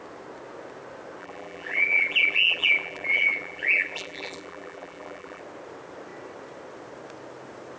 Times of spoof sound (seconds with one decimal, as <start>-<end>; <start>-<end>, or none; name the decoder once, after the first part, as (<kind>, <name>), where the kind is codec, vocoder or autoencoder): 1.2-5.4 (vocoder, BigVGAN v2)